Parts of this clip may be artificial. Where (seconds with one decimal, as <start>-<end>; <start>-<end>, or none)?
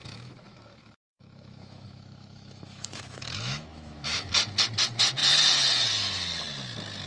0.0-4.3